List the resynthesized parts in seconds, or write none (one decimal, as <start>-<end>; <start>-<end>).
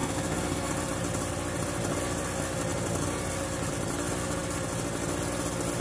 0.0-0.7